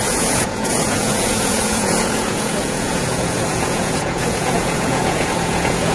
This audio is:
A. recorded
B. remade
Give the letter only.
B